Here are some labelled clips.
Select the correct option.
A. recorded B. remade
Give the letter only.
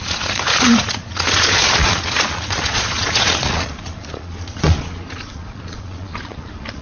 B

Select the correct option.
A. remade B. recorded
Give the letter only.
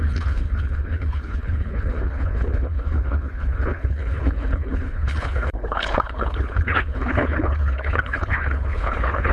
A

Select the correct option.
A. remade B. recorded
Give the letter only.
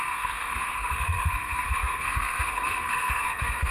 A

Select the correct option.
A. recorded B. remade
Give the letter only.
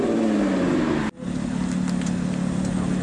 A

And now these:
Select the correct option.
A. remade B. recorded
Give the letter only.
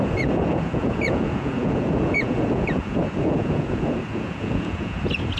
A